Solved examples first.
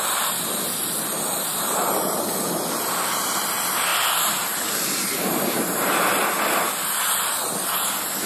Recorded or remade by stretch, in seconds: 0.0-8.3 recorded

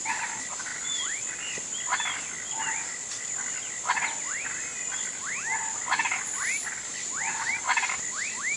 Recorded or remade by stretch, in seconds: 0.0-8.6 recorded

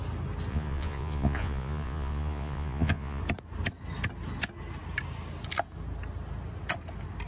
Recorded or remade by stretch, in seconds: 0.0-0.5 recorded; 0.5-3.2 remade; 3.2-7.3 recorded

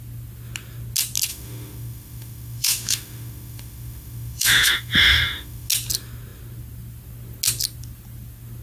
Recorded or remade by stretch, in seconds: 0.0-1.3 recorded; 1.3-5.7 remade; 5.7-8.6 recorded